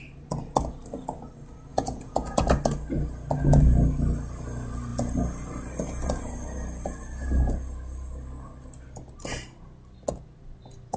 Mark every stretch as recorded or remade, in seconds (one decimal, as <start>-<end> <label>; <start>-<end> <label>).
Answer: 0.0-1.7 recorded; 1.7-2.5 remade; 2.5-11.0 recorded